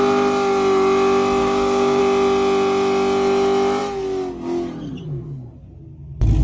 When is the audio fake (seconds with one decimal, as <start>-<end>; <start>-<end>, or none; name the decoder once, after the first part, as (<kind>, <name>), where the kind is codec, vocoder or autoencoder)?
1.4-2.0 (codec, DAC)

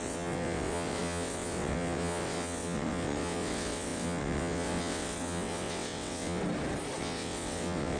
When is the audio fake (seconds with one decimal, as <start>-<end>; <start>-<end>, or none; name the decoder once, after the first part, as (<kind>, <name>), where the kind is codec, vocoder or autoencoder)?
0.0-6.4 (vocoder, WaveNeXt); 7.0-8.0

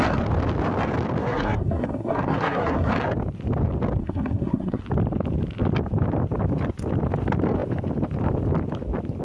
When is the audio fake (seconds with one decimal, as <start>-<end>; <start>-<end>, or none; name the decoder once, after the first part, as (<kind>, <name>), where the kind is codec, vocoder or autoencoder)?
1.2-2.9 (codec, SNAC); 4.0-4.8

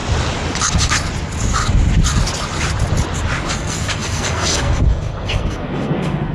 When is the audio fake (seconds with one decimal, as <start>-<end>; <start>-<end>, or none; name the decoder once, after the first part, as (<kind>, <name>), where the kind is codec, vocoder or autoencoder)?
3.5-6.3 (codec, SNAC)